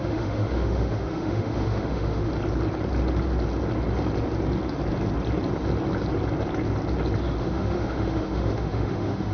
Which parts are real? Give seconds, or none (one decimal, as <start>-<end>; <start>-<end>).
2.3-7.4